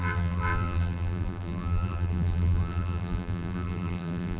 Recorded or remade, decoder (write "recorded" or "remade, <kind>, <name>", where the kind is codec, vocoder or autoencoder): remade, vocoder, BigVGAN v2